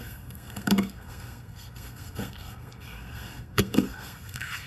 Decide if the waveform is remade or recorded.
remade